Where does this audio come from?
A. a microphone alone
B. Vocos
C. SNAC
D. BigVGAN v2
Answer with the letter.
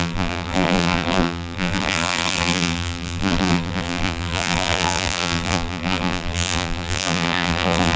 D